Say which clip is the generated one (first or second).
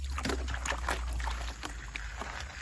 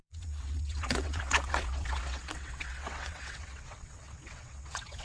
second